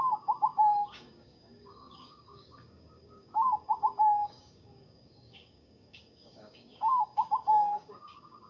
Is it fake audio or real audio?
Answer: fake